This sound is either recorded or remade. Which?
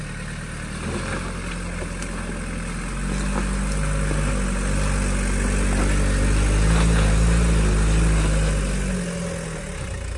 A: recorded